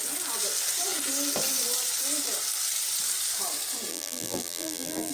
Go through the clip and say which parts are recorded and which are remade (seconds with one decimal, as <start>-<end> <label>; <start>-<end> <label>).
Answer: 0.0-3.9 recorded; 3.9-5.1 remade